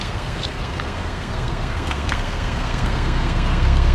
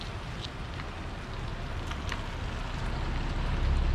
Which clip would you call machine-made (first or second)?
first